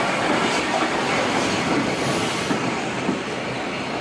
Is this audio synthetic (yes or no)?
no